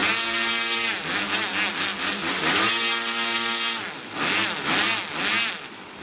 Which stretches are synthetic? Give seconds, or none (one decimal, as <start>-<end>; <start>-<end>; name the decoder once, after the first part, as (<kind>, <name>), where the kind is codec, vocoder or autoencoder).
none